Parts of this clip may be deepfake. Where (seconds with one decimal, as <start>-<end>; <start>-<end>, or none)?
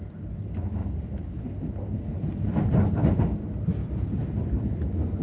0.8-3.2; 3.8-4.7